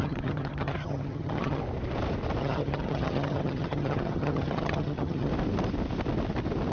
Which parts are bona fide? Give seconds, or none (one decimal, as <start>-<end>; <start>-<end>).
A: 1.6-2.4; 5.3-6.7